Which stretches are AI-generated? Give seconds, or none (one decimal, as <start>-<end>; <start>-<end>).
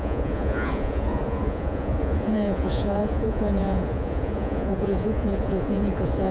0.0-6.3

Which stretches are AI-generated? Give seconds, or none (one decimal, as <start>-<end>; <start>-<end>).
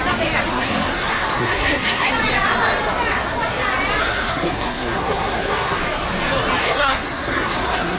0.5-2.1; 4.0-5.8; 6.6-8.0